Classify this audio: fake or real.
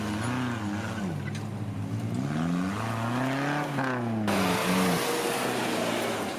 real